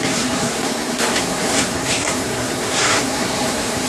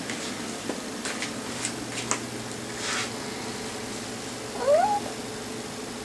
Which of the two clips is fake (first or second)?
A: first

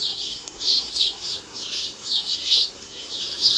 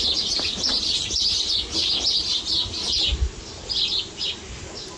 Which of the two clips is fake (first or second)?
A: first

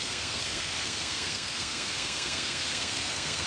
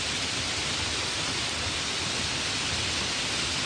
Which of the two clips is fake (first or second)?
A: first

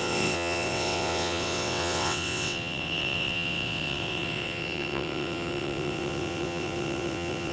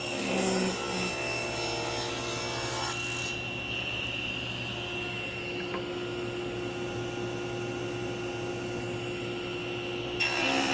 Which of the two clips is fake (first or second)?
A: first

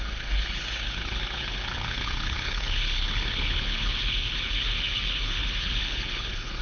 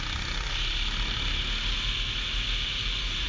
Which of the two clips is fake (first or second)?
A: first